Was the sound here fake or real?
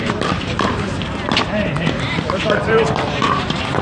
fake